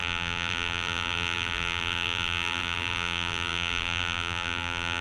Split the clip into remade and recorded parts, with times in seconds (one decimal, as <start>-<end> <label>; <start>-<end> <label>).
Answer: 0.0-5.0 remade